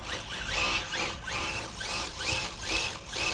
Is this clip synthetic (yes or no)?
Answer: no